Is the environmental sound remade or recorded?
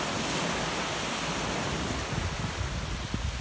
recorded